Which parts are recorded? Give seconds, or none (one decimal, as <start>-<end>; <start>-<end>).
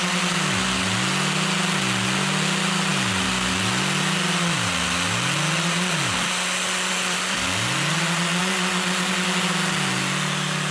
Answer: 0.0-10.7